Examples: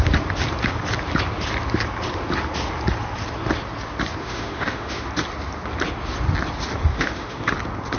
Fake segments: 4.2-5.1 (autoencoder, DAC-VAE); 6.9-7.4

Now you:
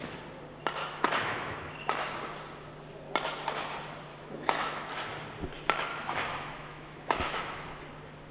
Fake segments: 0.8-1.7 (autoencoder, DAC-VAE); 4.1-4.9; 5.9-7.8

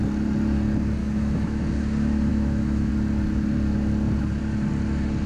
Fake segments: 1.0-1.6 (autoencoder, DAC-VAE); 2.3-2.9